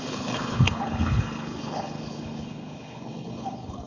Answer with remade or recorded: remade